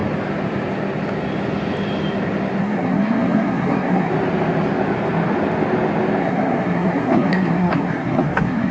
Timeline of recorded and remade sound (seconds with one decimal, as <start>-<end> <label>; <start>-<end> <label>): 0.0-2.6 recorded; 2.6-4.1 remade; 4.1-6.2 recorded; 6.2-8.7 remade